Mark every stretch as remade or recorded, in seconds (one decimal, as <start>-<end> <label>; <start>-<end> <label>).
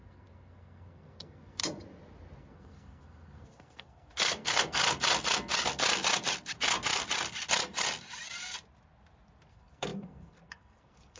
0.0-1.6 remade; 1.6-2.4 recorded; 2.4-4.8 remade; 4.8-9.5 recorded; 9.5-11.2 remade